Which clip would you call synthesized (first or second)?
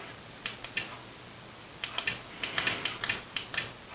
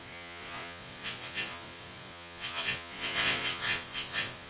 second